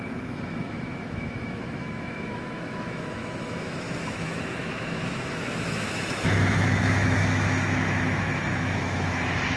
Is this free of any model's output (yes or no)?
no